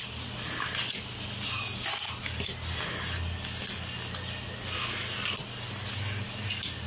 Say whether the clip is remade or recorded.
recorded